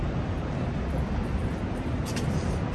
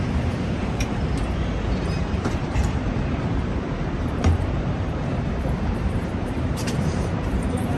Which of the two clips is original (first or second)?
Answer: first